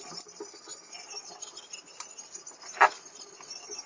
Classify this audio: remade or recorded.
recorded